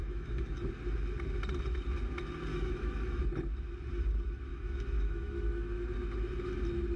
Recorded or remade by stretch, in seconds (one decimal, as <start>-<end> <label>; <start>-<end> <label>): 0.0-0.7 remade; 0.7-2.5 recorded; 2.5-3.2 remade; 3.2-4.5 recorded; 4.5-5.9 remade; 5.9-7.0 recorded

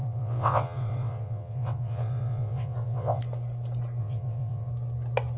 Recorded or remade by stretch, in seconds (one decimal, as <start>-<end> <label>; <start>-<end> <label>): 0.0-3.2 remade; 3.2-4.0 recorded; 4.0-4.7 remade; 4.7-5.4 recorded

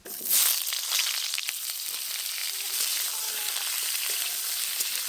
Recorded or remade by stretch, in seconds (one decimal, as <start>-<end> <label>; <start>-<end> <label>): 0.0-2.4 recorded; 2.4-3.5 remade; 3.5-5.1 recorded

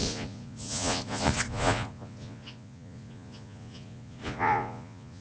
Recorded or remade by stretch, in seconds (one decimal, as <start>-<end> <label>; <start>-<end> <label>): 0.0-5.2 remade

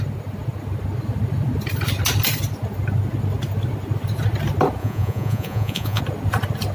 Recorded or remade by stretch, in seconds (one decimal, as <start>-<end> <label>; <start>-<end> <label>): 0.0-4.8 recorded; 4.8-6.0 remade; 6.0-6.7 recorded

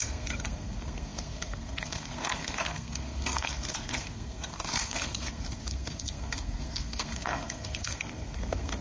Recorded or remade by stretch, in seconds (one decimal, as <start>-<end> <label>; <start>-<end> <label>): 0.0-8.8 remade

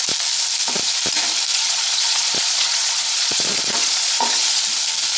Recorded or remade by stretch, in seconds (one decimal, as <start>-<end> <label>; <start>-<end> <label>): 0.0-1.5 recorded; 1.5-4.6 remade; 4.6-5.2 recorded